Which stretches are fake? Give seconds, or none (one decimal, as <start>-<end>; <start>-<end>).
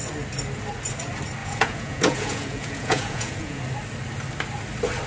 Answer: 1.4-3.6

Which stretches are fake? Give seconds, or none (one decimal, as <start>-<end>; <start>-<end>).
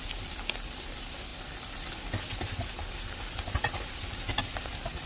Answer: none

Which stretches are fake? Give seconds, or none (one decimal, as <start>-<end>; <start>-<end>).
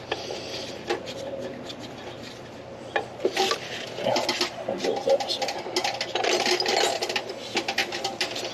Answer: none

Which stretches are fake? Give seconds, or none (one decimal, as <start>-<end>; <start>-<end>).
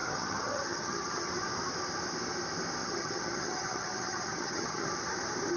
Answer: 0.0-1.3; 2.8-4.9